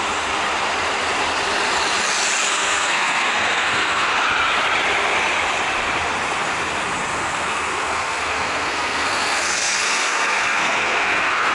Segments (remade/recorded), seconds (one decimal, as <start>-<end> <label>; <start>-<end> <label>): 0.0-2.5 recorded; 2.5-4.1 remade; 4.1-7.1 recorded; 7.1-11.5 remade